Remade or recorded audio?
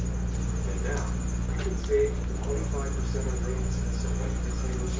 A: recorded